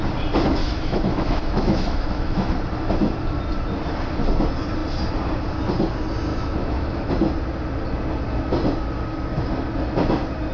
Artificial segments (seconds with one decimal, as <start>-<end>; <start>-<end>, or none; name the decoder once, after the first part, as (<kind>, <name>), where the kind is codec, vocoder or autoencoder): 0.6-2.6 (autoencoder, DAC-VAE); 6.3-7.1